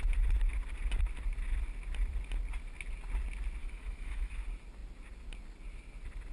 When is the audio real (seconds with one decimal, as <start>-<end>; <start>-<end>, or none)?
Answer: 0.0-3.6; 4.3-6.3

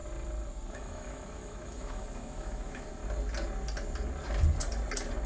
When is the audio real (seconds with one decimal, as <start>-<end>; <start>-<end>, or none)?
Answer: 0.0-0.7; 3.0-5.3

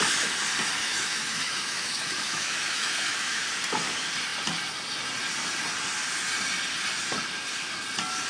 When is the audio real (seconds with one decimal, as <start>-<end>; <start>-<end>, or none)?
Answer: 0.0-0.9; 3.4-8.3

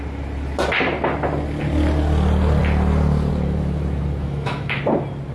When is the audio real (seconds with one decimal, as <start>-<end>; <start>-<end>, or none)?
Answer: 0.0-4.2; 4.8-5.3

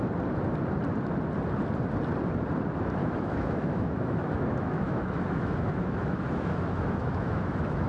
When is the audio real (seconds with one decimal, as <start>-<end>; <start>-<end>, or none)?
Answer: 0.0-3.0